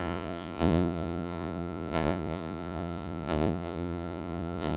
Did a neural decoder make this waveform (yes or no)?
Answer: yes